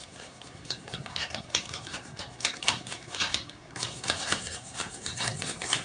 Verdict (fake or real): fake